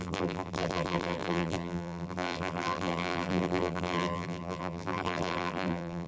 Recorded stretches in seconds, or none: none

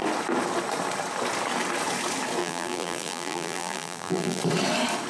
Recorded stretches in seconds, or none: 0.0-2.4; 4.4-5.1

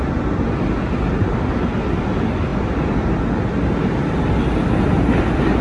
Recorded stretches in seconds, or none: 0.0-2.5; 3.1-5.6

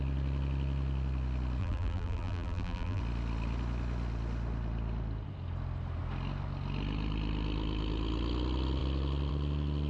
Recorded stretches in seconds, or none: 0.0-1.6; 3.0-9.9

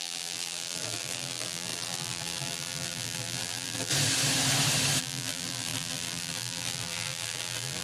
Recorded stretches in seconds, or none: 3.9-5.0

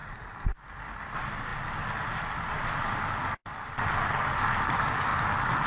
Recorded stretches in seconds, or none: 0.0-0.8; 1.5-4.4; 5.1-5.7

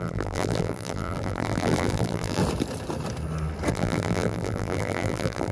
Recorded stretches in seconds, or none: 2.4-3.7

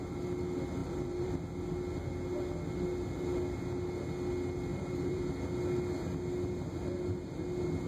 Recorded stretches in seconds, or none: 0.0-0.8; 1.3-4.7; 5.3-7.9